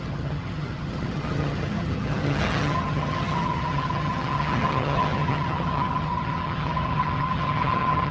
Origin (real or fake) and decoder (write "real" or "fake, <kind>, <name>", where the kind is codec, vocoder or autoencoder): fake, vocoder, HiFi-GAN